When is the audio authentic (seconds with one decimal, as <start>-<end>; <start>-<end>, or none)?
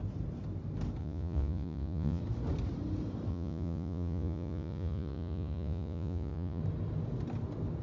0.0-1.0; 2.2-3.3; 6.6-7.8